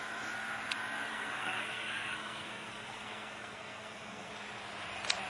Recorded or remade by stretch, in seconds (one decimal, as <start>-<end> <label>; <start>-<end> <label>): 0.0-1.1 recorded; 1.1-4.3 remade; 4.3-5.3 recorded